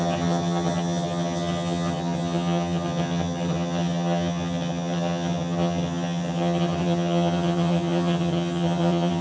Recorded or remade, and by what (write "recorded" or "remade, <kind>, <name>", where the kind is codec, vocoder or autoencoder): remade, vocoder, HiFi-GAN